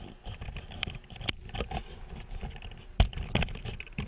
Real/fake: fake